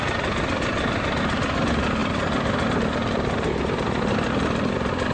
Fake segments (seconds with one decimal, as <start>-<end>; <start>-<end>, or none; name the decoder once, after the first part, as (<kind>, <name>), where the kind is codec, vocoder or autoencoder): none